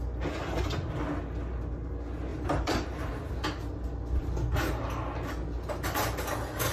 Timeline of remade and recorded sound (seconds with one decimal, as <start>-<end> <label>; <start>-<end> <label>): 0.0-2.3 recorded; 2.3-3.3 remade; 3.3-6.7 recorded